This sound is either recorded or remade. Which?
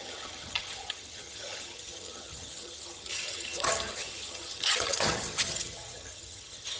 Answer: remade